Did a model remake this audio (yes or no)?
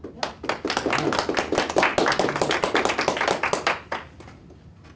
no